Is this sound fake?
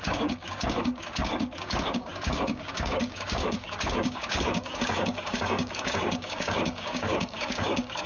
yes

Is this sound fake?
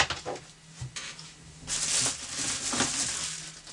no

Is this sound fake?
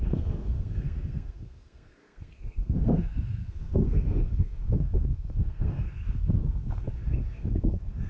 yes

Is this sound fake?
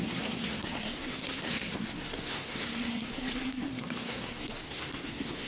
yes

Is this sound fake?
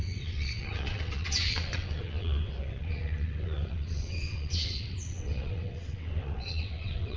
yes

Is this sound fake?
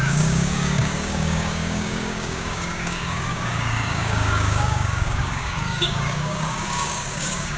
yes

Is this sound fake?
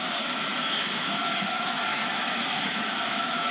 yes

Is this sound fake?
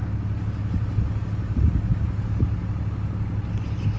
no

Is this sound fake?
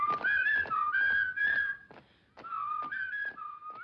no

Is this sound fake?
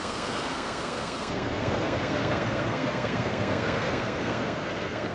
yes